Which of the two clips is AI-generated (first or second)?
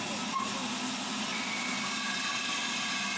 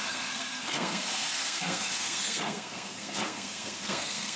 second